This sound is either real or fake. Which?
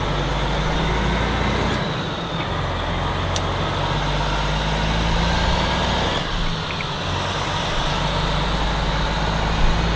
real